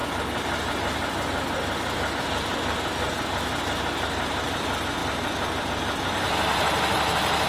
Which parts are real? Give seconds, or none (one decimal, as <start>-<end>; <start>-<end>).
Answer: 0.0-7.5